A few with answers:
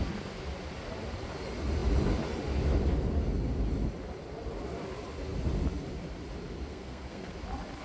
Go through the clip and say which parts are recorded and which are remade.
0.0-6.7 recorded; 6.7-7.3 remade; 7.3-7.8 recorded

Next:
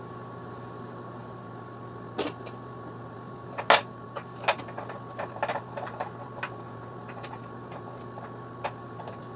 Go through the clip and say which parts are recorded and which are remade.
0.0-9.4 recorded

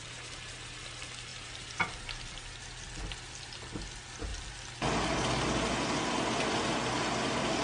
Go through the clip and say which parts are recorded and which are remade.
0.0-7.6 recorded